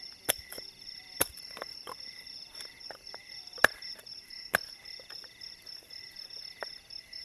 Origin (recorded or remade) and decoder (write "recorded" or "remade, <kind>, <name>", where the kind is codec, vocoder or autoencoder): remade, vocoder, BigVGAN v2